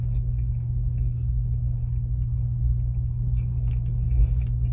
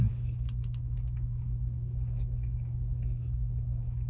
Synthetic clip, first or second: second